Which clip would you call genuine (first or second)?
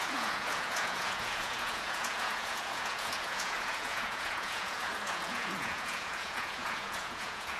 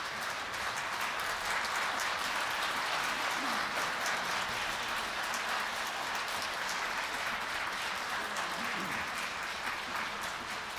second